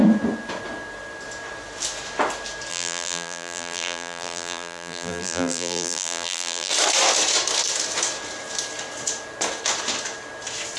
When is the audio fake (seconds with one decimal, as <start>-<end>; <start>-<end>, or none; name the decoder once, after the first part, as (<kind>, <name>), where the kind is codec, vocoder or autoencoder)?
2.7-6.7 (vocoder, BigVGAN v2)